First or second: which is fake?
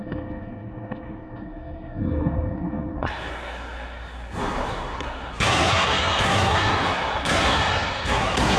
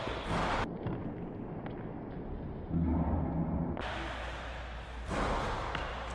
first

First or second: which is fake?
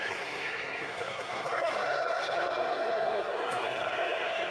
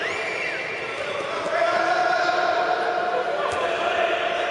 first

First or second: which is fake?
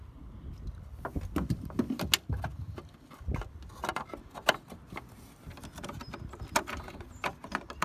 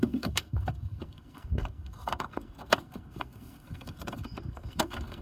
second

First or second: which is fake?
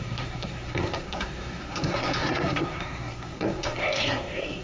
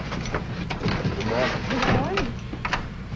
first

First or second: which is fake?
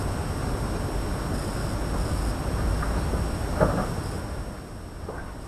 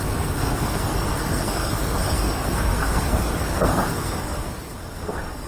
second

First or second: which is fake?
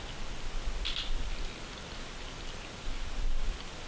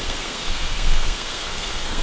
second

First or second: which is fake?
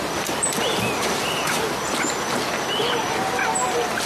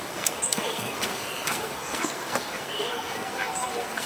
second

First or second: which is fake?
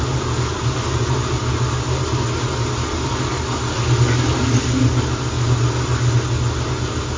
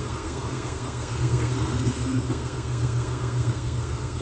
second